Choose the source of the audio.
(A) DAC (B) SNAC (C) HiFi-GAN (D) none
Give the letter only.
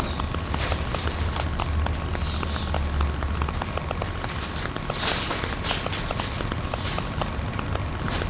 D